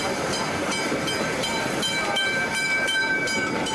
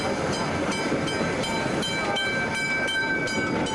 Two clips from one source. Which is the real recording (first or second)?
second